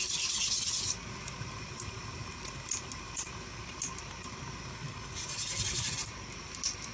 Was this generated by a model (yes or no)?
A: no